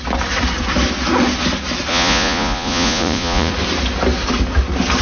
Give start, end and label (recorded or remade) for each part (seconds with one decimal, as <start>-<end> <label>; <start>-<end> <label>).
0.0-1.9 recorded; 1.9-3.5 remade; 3.5-5.0 recorded